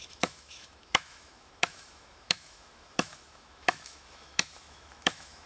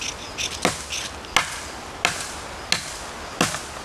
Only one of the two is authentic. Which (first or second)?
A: second